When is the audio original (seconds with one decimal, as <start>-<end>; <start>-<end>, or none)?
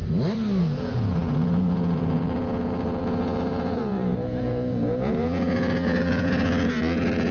0.0-0.6